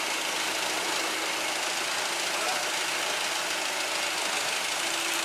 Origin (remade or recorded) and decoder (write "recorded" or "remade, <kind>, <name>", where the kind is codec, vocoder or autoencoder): recorded